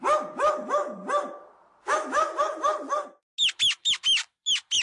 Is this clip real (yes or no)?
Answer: yes